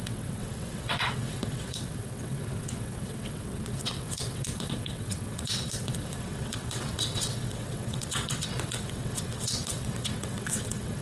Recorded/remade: remade